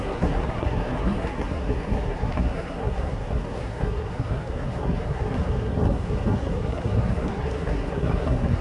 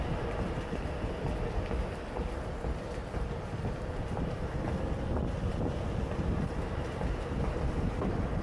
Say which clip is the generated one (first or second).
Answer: first